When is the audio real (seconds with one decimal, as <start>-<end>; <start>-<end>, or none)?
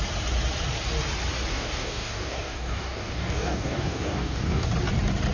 0.0-1.5; 4.7-5.3